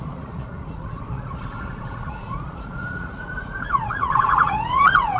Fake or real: fake